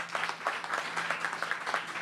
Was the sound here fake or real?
real